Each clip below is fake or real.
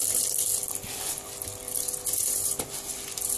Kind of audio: real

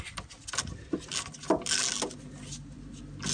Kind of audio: real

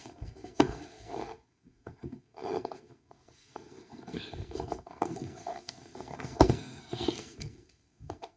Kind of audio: fake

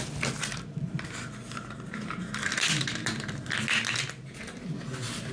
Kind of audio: real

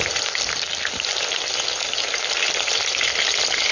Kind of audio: real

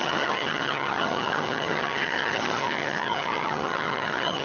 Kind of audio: fake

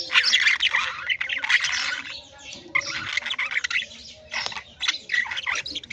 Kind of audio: real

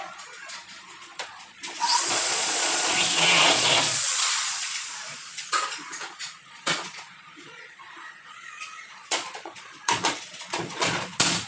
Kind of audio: fake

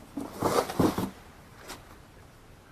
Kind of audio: real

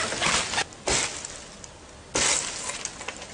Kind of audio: real